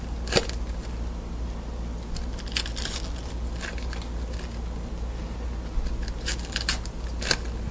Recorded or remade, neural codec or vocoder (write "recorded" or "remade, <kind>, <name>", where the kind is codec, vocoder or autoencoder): recorded